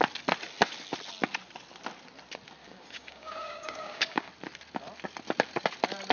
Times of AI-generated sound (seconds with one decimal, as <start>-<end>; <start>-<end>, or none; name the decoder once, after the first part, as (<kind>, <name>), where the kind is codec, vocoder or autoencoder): 2.6-4.3 (codec, DAC)